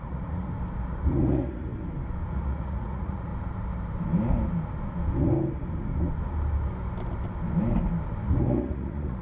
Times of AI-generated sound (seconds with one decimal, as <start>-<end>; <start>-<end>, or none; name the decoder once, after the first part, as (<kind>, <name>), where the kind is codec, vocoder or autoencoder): 0.0-0.5 (vocoder, Vocos); 1.1-1.7; 2.3-3.3; 8.4-9.2